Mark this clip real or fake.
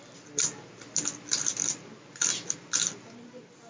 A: real